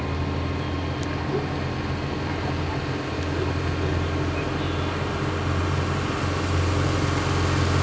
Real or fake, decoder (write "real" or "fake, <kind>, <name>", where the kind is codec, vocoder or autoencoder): real